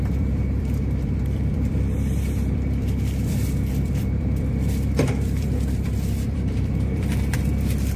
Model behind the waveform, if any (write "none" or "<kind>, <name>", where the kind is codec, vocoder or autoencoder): vocoder, BigVGAN v2